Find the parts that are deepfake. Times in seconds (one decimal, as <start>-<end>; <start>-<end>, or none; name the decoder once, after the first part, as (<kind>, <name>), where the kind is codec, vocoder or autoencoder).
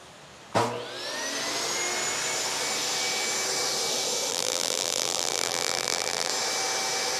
4.3-6.3 (vocoder, BigVGAN v2)